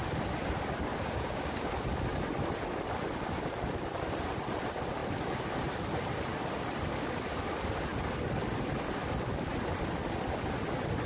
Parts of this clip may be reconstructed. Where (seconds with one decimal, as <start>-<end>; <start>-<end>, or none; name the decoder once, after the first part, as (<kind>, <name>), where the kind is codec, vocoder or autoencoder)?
0.9-1.7 (codec, DAC)